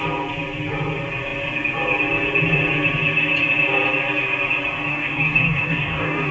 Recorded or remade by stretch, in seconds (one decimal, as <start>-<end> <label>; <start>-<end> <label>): 0.0-4.9 recorded; 4.9-6.3 remade

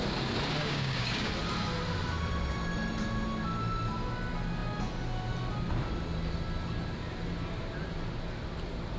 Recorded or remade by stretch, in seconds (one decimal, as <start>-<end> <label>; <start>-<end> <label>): 0.0-0.6 recorded; 0.6-1.3 remade; 1.3-9.0 recorded

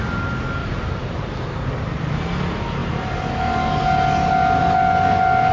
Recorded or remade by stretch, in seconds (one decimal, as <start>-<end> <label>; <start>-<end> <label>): 0.0-0.6 recorded; 0.6-1.3 remade; 1.3-5.5 recorded

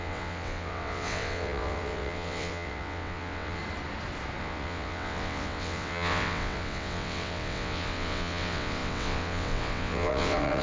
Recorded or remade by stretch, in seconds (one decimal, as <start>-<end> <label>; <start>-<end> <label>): 0.0-3.6 remade; 3.6-4.4 recorded; 4.4-10.6 remade

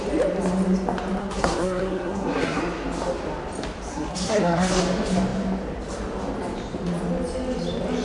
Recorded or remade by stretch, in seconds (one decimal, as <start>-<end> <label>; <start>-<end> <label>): 0.0-1.2 recorded; 1.2-2.6 remade; 2.6-3.9 recorded; 3.9-4.8 remade; 4.8-8.0 recorded

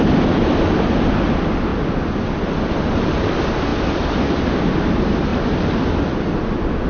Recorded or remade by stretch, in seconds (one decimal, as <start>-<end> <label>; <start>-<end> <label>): 0.0-1.7 recorded; 1.7-2.3 remade; 2.3-3.7 recorded; 3.7-4.6 remade; 4.6-5.3 recorded; 5.3-6.9 remade

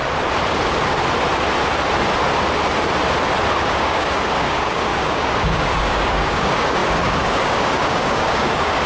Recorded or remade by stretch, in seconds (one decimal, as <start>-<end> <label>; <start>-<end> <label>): 0.0-3.6 recorded; 3.6-8.9 remade

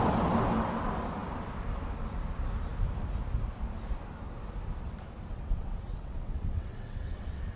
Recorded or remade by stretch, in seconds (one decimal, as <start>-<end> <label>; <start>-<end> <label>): 0.0-5.3 recorded; 5.3-7.6 remade